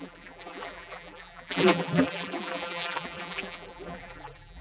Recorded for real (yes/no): no